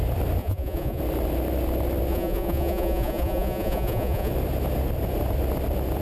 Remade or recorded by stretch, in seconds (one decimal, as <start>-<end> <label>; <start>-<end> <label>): 0.0-0.4 recorded; 0.4-1.0 remade; 1.0-2.1 recorded; 2.1-4.3 remade; 4.3-6.0 recorded